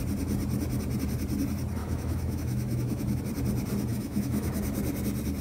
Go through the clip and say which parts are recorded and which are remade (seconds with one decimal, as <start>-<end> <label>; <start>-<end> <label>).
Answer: 0.0-1.8 recorded; 1.8-3.2 remade; 3.2-3.9 recorded; 3.9-4.5 remade; 4.5-5.4 recorded